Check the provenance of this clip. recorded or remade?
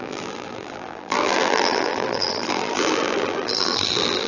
remade